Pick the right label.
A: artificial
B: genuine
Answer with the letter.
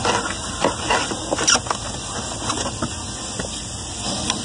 B